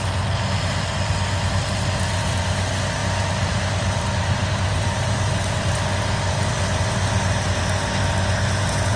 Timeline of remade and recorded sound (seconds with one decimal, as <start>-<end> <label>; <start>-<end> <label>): 0.0-9.0 recorded